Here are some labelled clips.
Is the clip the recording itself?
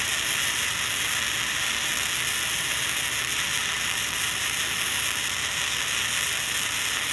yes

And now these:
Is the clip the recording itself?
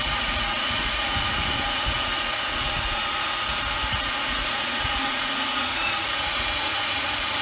no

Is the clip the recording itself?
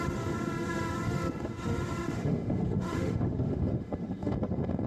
no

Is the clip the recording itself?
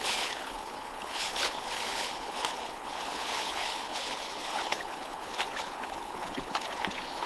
no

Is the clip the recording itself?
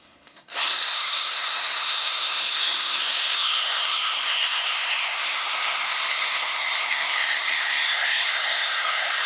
no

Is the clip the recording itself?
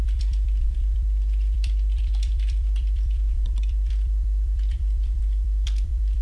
no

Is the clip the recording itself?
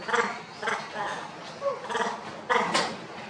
yes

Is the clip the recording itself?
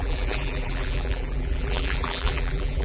no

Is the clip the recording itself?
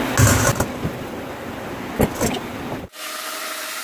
yes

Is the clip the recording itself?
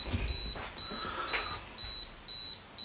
yes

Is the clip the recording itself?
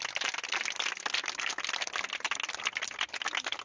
yes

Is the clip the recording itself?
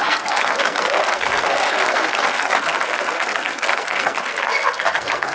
no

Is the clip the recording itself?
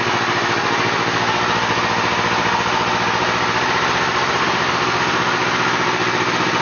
yes